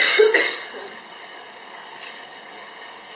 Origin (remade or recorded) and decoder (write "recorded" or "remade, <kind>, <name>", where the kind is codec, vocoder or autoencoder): remade, codec, DAC